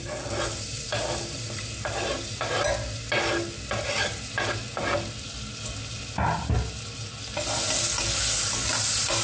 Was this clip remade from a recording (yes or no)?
no